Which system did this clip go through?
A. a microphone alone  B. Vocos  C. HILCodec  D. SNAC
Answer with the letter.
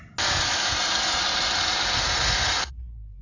A